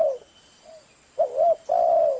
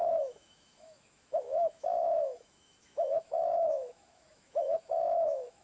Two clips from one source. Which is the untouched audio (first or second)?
first